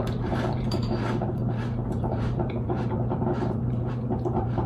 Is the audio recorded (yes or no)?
no